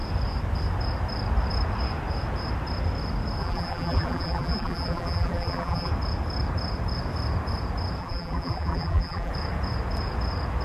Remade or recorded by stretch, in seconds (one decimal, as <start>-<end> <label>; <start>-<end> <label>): 0.0-3.4 recorded; 3.4-5.9 remade; 5.9-8.0 recorded; 8.0-9.3 remade; 9.3-10.6 recorded